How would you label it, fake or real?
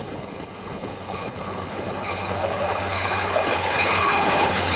fake